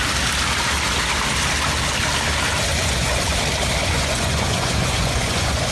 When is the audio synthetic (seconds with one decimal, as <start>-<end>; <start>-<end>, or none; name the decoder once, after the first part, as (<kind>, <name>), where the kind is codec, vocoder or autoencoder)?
2.7-3.4 (vocoder, Vocos); 3.8-5.7